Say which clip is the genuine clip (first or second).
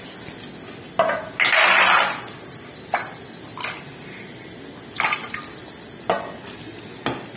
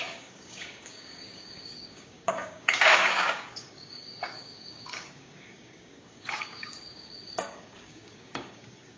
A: first